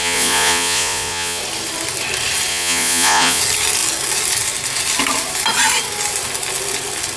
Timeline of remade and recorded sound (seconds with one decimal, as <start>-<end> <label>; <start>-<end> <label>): 0.0-1.4 remade; 1.4-2.5 recorded; 2.5-3.4 remade; 3.4-7.2 recorded